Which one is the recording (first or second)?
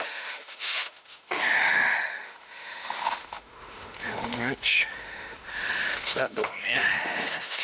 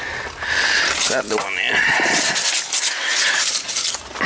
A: second